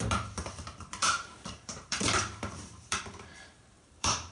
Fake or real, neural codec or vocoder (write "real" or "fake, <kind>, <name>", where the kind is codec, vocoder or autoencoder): fake, vocoder, BigVGAN v2